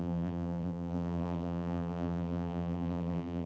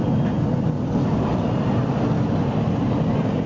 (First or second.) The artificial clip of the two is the first